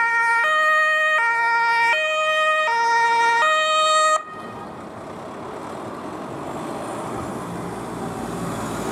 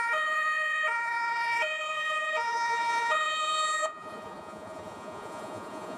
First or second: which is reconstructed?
second